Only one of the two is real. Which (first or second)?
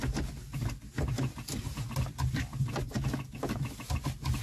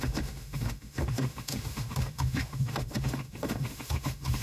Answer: first